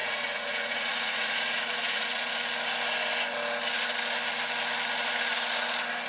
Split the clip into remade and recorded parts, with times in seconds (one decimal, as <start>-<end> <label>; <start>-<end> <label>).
0.0-2.3 remade; 2.3-6.1 recorded